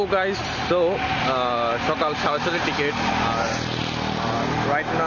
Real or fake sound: real